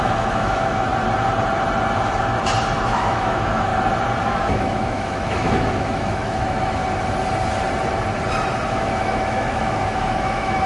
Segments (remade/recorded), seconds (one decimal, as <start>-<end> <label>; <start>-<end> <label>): 0.0-0.9 remade; 0.9-2.8 recorded; 2.8-3.7 remade; 3.7-4.2 recorded; 4.2-6.8 remade; 6.8-8.7 recorded; 8.7-10.7 remade